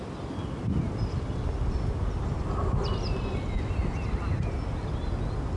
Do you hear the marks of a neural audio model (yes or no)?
no